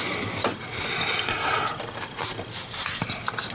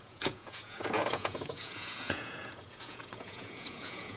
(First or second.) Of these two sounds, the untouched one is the first